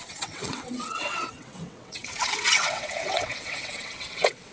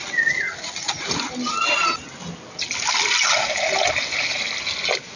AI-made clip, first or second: first